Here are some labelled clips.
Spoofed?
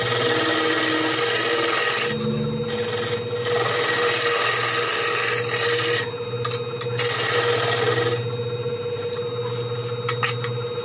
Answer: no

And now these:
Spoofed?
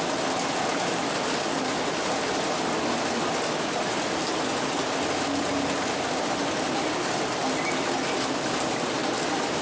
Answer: no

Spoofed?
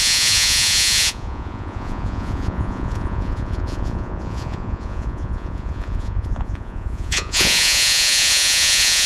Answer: yes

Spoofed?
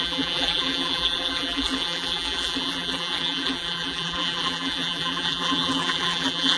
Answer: yes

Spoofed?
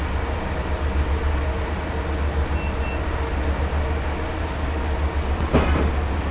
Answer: no